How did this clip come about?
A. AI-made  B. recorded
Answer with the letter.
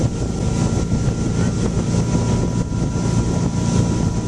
B